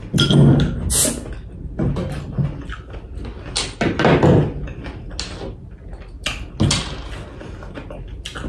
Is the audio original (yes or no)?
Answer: yes